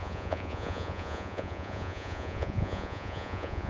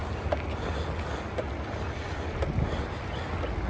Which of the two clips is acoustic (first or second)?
second